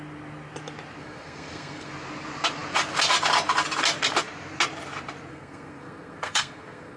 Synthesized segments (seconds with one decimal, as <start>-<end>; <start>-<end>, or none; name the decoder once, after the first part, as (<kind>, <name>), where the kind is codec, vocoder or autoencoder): 1.0-1.9 (codec, SNAC); 5.3-7.0

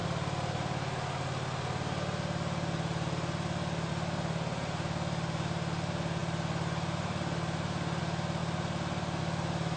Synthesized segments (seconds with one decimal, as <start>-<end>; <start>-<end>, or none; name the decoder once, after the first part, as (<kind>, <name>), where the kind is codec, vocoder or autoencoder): none

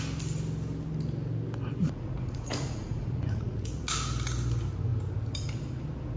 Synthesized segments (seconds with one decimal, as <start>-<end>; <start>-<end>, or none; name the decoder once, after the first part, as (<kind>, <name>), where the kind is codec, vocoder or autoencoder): 1.8-3.8 (vocoder, Vocos)

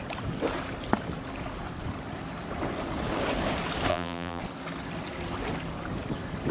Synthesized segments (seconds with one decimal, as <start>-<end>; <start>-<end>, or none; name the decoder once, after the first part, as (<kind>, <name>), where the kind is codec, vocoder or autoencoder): 3.9-4.4 (vocoder, BigVGAN v2)

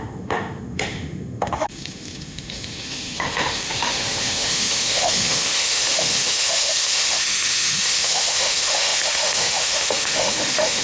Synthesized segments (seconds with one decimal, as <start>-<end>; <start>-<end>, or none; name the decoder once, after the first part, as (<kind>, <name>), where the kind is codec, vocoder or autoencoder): 0.0-10.8 (autoencoder, DAC-VAE)

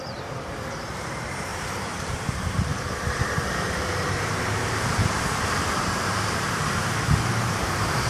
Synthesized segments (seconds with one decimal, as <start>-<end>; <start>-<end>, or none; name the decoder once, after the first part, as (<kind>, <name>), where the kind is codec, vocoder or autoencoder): 0.0-8.1 (vocoder, BigVGAN v2)